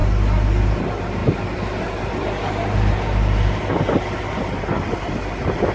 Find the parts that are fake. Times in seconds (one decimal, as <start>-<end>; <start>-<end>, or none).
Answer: none